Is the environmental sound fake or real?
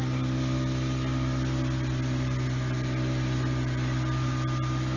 real